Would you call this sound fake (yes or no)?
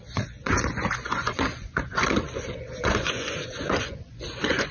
yes